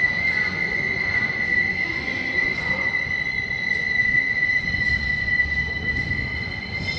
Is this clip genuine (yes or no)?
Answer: no